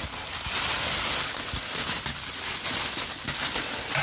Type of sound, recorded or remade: recorded